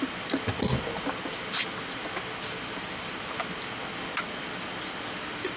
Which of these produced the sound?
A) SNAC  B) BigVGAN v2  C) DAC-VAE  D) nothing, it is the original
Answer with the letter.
D